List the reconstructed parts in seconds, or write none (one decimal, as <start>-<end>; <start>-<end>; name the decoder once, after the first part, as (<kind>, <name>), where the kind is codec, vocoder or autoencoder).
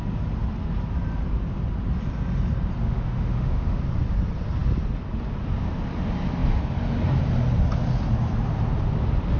2.8-3.8 (autoencoder, DAC-VAE)